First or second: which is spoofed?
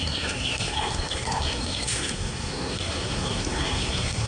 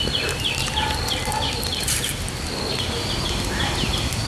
first